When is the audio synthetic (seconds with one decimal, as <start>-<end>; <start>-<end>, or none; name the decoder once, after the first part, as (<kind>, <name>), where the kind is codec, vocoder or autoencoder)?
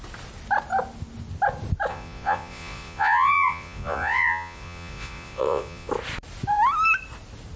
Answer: 1.9-5.9 (vocoder, Vocos)